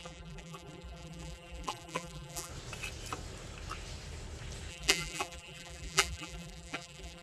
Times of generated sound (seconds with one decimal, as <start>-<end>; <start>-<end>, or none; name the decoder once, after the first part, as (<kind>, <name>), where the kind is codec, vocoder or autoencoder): 0.0-2.5 (vocoder, BigVGAN v2); 4.7-7.2